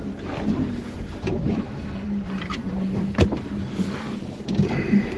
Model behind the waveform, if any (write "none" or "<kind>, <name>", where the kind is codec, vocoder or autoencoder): vocoder, BigVGAN v2